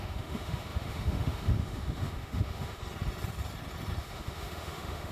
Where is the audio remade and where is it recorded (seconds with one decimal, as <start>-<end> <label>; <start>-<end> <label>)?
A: 0.0-2.8 remade; 2.8-4.0 recorded; 4.0-5.1 remade